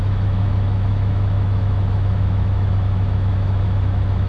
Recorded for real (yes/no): no